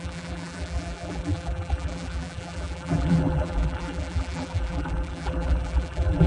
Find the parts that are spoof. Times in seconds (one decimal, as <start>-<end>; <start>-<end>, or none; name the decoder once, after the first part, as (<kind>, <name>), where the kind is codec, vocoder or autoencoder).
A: 0.0-6.3 (vocoder, BigVGAN v2)